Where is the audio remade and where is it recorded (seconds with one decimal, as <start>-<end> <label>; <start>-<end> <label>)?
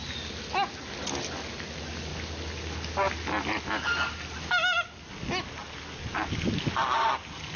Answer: 0.0-7.6 recorded